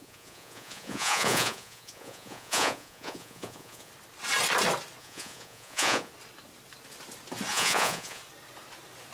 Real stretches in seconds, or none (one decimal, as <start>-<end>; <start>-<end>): 3.9-5.0; 6.1-7.5; 8.2-9.1